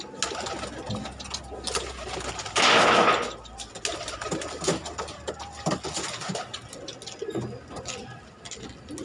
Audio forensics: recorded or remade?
recorded